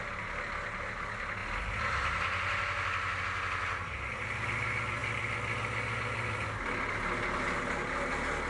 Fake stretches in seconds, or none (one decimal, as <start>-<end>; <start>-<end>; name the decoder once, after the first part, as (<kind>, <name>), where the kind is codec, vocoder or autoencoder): none